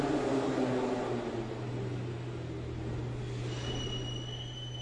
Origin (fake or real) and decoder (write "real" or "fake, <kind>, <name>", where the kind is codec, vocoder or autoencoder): real